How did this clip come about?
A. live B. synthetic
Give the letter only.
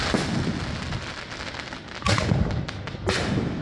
A